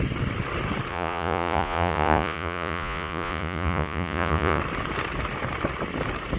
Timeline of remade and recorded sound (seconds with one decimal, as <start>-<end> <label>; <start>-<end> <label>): 0.0-0.9 recorded; 0.9-4.6 remade; 4.6-6.4 recorded